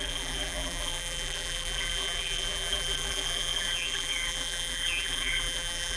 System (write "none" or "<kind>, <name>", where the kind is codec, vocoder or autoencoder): vocoder, BigVGAN v2